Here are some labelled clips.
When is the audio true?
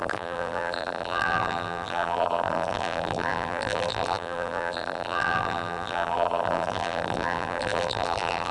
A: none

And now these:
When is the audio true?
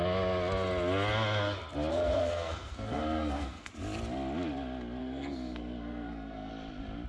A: 0.0-1.9; 3.7-5.0; 6.5-7.1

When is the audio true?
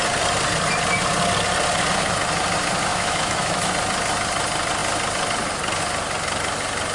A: 0.0-2.9; 3.7-6.9